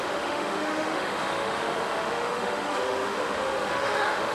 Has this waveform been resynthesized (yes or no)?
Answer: yes